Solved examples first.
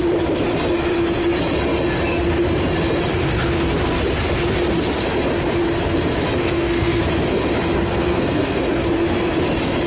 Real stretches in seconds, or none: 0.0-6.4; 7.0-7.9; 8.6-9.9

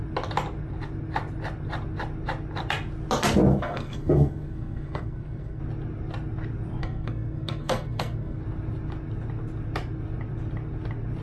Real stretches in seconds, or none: 0.0-3.5; 5.6-6.8; 8.4-11.2

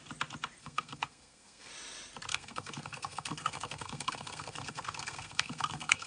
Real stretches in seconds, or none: 0.0-0.6; 1.7-2.3

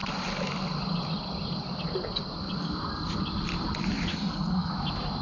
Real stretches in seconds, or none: 0.0-4.1; 4.7-5.2